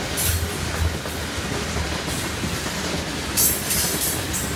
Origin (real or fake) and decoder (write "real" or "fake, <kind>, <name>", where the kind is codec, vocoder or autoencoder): real